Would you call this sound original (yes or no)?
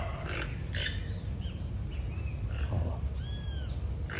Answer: yes